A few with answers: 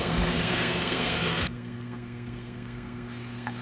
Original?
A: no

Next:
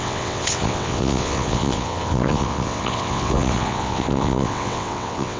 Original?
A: no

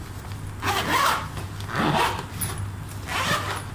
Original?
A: yes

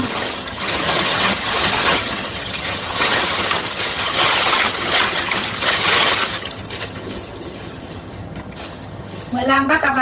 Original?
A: no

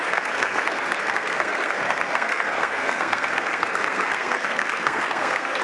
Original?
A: no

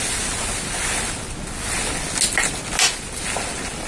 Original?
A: yes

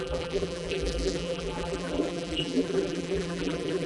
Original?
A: no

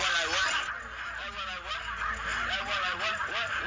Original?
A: yes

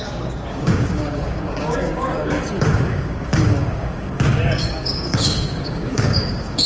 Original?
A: no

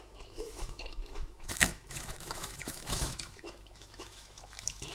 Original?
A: no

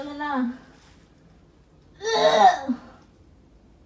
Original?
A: yes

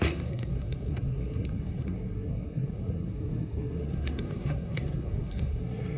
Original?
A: no